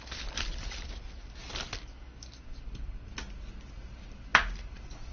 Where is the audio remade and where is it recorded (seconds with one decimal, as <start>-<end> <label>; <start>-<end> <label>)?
0.0-5.1 recorded